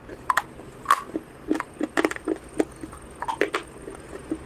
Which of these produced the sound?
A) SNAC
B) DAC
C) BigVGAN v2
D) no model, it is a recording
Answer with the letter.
D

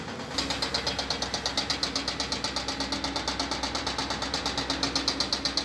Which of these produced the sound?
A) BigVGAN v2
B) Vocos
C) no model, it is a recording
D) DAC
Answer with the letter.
C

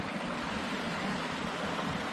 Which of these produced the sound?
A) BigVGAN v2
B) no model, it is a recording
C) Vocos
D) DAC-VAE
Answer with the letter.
B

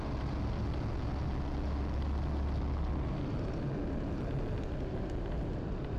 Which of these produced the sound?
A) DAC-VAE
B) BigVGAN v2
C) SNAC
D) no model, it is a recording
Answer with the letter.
D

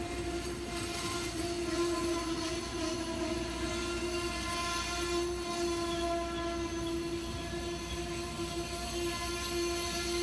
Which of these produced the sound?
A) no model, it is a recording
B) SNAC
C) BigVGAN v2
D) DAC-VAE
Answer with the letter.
A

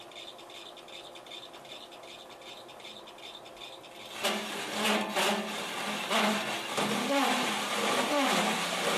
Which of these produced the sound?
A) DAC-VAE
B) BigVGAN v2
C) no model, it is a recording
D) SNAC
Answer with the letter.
C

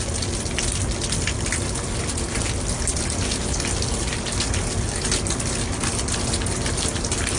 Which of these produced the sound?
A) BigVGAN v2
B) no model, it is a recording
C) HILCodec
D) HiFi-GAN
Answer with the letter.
B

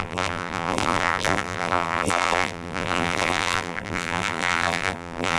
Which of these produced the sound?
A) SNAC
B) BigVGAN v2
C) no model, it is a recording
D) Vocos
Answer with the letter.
B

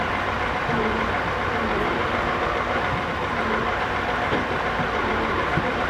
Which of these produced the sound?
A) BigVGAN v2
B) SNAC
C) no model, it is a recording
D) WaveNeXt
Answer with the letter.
A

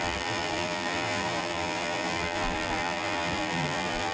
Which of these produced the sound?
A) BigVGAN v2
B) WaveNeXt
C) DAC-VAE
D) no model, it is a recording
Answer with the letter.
A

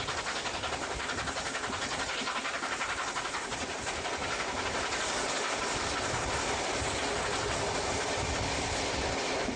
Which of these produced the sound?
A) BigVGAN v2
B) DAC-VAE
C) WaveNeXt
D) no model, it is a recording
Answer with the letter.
D